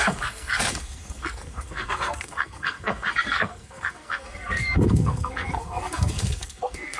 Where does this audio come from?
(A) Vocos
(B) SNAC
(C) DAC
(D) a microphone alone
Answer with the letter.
B